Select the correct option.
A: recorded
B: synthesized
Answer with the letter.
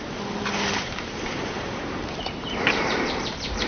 B